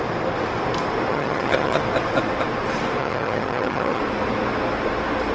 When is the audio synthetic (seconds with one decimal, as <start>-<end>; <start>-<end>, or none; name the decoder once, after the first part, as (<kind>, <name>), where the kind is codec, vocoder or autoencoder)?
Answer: 1.1-1.8 (vocoder, HiFi-GAN); 3.0-4.0